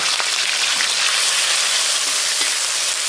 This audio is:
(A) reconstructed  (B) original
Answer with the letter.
B